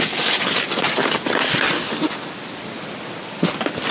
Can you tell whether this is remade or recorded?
recorded